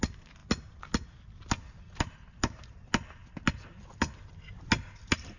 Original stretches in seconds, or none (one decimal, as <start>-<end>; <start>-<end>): 0.0-5.4